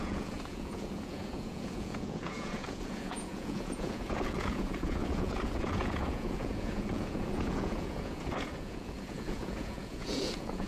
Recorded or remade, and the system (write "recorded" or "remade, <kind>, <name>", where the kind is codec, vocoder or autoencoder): remade, vocoder, Vocos